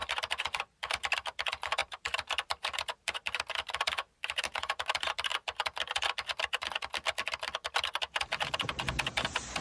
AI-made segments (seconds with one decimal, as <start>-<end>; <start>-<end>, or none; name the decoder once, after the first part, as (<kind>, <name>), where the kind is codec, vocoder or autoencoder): 0.0-5.3 (vocoder, BigVGAN v2); 8.5-9.6